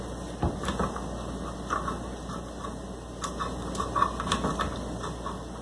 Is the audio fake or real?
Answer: real